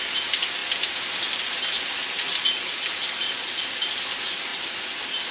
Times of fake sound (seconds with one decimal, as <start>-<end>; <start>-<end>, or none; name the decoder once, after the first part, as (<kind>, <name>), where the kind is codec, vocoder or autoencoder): none